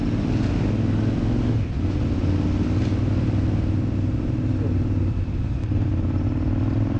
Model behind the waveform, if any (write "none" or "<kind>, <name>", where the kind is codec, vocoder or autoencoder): none